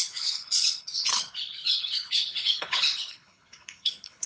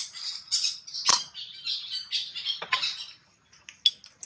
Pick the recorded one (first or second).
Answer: second